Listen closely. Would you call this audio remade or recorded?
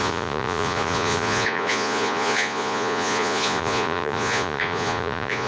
remade